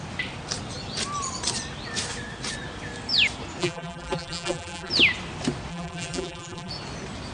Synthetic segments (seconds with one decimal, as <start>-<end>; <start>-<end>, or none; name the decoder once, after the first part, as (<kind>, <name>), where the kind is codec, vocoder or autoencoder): 3.6-4.9 (vocoder, BigVGAN v2); 5.7-6.7